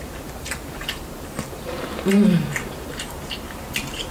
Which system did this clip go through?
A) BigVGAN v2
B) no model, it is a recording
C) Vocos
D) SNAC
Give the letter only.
A